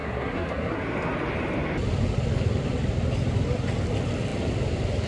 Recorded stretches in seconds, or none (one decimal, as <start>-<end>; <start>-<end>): 0.8-5.1